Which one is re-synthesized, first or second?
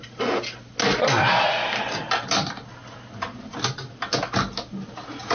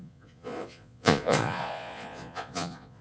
second